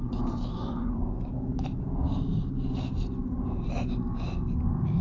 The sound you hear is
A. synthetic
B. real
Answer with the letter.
B